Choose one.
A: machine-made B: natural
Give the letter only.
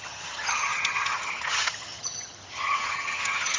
A